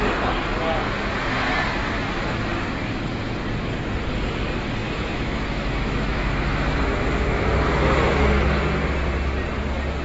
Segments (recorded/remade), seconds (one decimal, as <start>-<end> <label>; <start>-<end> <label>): 0.0-4.8 recorded; 4.8-8.2 remade; 8.2-10.0 recorded